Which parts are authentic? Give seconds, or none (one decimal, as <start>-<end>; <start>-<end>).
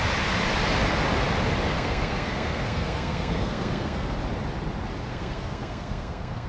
0.0-1.7; 4.2-5.1